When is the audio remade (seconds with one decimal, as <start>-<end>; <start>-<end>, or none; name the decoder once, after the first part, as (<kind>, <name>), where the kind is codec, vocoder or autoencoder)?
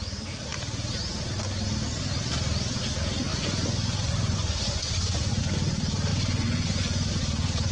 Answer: 3.3-5.4 (vocoder, Vocos); 6.1-7.2